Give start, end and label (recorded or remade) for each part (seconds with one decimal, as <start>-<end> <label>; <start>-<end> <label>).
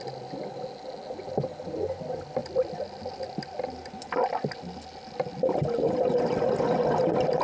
0.0-7.4 recorded